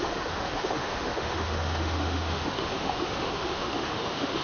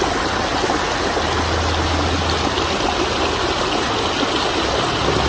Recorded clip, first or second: second